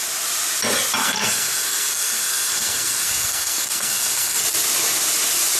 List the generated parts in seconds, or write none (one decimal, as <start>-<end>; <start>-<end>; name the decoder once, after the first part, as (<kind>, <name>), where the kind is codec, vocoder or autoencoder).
1.0-4.4 (codec, SNAC)